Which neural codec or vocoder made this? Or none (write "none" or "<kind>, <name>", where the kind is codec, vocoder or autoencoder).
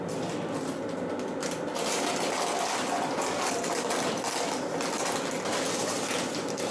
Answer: none